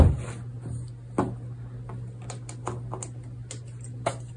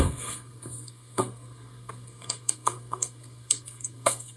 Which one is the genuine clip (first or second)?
first